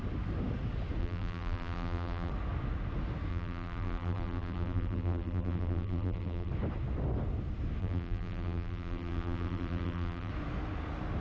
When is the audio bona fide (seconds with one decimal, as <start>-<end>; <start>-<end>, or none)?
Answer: 0.0-1.0; 2.3-3.3; 6.5-7.8; 10.3-11.2